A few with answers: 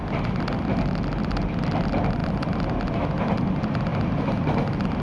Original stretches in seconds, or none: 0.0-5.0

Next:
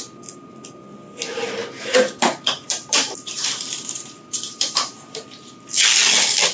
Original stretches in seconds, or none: 0.0-1.6; 5.5-6.5

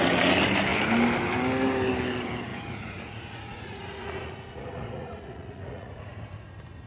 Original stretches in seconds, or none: 0.0-2.5; 6.5-6.9

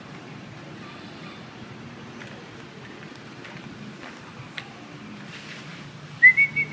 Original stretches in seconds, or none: 0.0-6.7